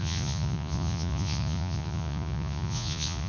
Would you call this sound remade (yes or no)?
yes